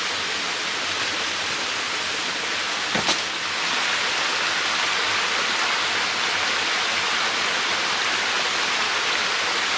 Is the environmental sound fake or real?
real